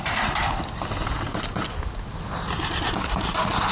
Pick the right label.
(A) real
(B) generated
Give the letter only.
A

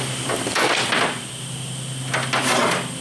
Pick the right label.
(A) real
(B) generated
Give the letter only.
A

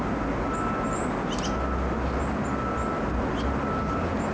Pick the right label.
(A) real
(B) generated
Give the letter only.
A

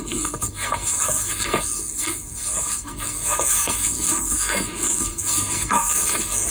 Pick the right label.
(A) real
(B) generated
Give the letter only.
B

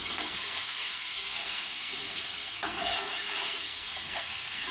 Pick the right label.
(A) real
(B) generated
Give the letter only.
B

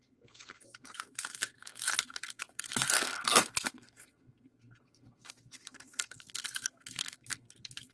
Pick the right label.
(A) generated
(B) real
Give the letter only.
A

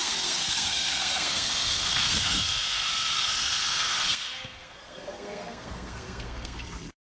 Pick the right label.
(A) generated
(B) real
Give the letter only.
A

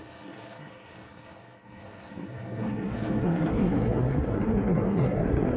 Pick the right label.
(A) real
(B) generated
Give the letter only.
B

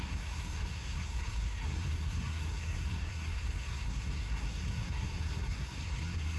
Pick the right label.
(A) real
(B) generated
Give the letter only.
B